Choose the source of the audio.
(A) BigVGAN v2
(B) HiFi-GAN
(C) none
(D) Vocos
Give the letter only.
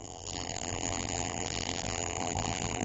A